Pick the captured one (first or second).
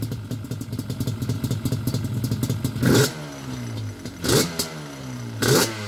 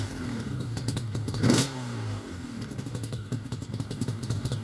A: first